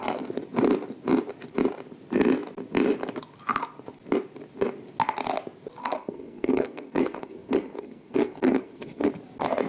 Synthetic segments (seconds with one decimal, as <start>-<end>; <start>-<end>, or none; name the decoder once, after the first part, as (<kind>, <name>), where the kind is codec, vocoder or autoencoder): 5.8-9.1 (codec, SNAC)